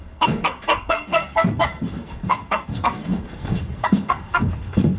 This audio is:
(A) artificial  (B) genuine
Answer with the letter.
A